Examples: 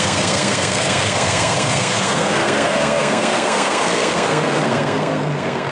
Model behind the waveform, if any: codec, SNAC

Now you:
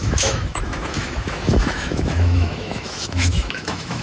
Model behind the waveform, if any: autoencoder, DAC-VAE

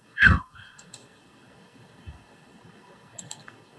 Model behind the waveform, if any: codec, SNAC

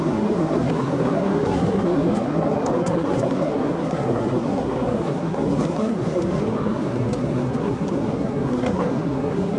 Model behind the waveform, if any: codec, SNAC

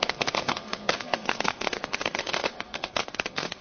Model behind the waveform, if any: codec, SNAC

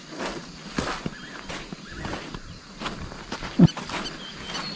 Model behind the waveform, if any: none